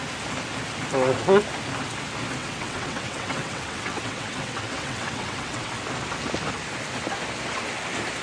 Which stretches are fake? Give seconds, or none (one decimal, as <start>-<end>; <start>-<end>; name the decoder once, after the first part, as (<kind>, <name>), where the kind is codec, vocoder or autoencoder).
2.4-5.7 (vocoder, WaveNeXt)